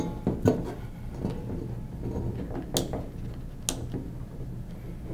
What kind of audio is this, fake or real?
real